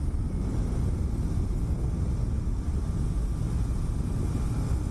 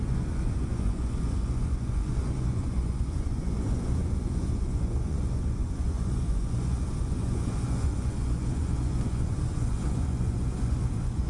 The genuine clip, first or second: first